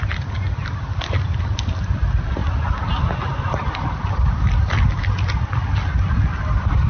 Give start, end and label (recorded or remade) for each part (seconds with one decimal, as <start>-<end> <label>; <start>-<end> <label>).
0.0-6.9 recorded